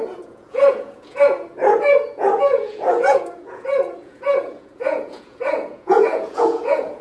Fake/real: fake